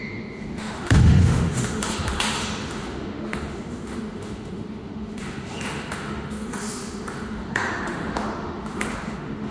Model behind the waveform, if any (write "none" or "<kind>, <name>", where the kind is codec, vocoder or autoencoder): autoencoder, DAC-VAE